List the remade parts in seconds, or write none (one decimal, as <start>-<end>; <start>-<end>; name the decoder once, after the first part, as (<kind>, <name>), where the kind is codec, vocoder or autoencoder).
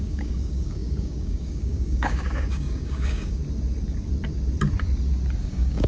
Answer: 0.0-3.4 (codec, DAC); 5.4-5.9